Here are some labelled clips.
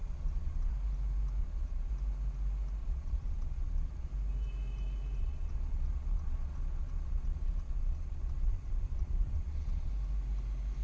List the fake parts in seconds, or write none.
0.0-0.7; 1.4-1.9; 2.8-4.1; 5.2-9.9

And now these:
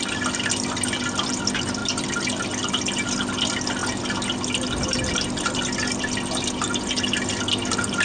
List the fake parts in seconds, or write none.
none

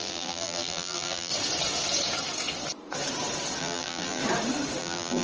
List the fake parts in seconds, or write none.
0.0-1.3; 3.6-4.2; 4.8-5.2

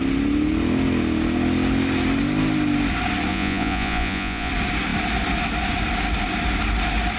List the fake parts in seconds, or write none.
3.3-4.5

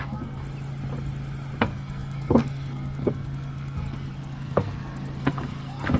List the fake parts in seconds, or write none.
0.0-0.4; 1.6-6.0

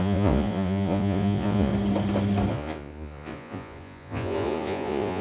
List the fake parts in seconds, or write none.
0.0-1.7; 2.5-5.2